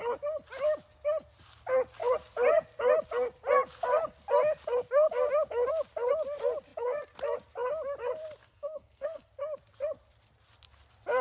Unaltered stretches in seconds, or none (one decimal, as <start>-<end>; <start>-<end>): 0.0-8.4; 9.3-11.2